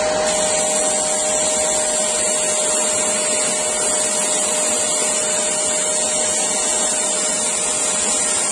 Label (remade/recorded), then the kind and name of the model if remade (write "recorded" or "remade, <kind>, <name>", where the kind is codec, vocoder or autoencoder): recorded